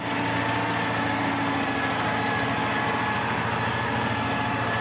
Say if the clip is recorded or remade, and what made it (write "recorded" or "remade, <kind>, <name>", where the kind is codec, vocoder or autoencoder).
recorded